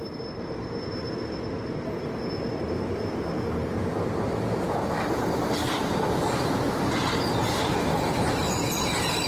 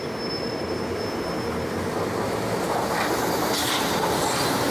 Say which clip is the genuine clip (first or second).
second